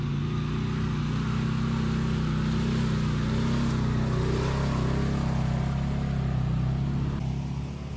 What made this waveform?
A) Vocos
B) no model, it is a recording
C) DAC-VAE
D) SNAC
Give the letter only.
B